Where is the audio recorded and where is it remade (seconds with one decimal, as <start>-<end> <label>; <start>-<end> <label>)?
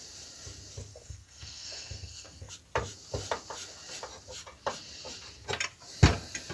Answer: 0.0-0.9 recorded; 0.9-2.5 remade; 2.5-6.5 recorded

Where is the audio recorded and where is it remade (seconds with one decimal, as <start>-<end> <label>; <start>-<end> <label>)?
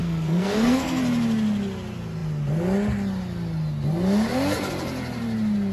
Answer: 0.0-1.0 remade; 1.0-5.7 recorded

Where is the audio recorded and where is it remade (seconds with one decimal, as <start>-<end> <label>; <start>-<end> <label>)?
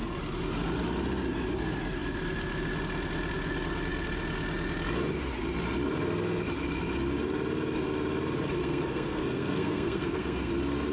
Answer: 0.0-8.6 recorded; 8.6-10.5 remade; 10.5-10.9 recorded